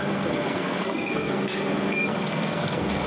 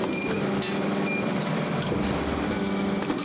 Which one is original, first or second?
second